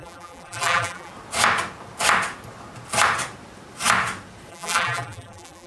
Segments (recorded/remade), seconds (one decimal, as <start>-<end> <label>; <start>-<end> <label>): 0.0-1.1 remade; 1.1-4.5 recorded; 4.5-5.7 remade